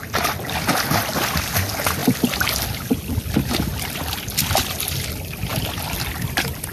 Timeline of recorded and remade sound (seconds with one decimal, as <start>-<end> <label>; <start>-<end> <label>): 0.0-6.7 recorded